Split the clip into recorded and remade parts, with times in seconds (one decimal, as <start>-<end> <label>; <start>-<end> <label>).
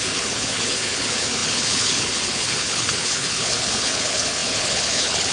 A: 0.0-5.3 remade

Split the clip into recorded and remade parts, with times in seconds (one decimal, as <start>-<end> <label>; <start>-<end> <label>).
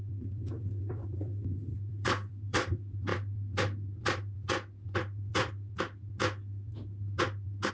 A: 0.0-3.1 remade; 3.1-7.7 recorded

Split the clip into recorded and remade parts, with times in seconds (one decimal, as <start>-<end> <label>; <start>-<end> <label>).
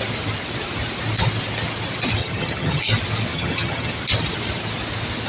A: 0.0-2.2 recorded; 2.2-2.8 remade; 2.8-3.3 recorded; 3.3-3.9 remade; 3.9-5.3 recorded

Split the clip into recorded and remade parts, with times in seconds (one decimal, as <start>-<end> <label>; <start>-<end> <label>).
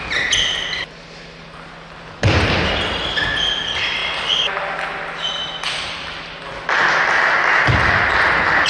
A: 0.0-8.7 recorded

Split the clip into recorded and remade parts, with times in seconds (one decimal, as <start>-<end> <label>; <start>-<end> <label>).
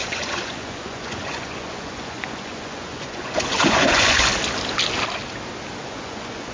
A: 0.0-4.3 remade; 4.3-5.8 recorded; 5.8-6.5 remade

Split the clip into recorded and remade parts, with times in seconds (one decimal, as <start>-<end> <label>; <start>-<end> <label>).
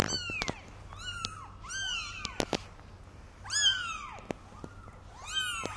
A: 0.0-5.8 recorded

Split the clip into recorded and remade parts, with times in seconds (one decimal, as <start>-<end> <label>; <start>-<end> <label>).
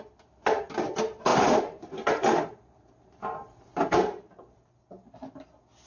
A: 0.0-1.3 recorded; 1.3-4.8 remade; 4.8-5.9 recorded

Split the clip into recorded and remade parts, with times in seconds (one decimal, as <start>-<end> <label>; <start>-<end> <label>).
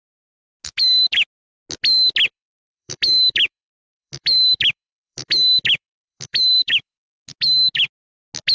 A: 0.0-2.3 recorded; 2.3-7.0 remade; 7.0-8.5 recorded